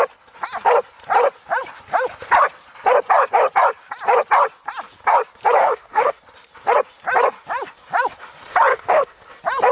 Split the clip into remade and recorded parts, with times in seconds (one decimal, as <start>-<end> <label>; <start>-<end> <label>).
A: 0.0-5.6 recorded; 5.6-6.2 remade; 6.2-8.7 recorded; 8.7-9.2 remade; 9.2-9.7 recorded